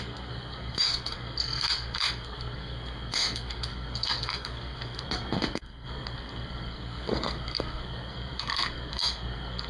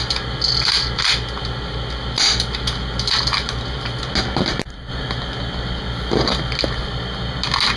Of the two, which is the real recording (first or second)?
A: second